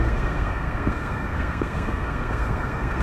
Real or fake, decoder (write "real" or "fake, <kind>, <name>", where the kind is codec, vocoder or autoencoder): fake, codec, SNAC